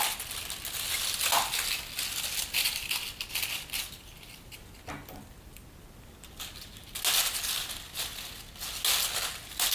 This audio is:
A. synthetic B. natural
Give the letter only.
B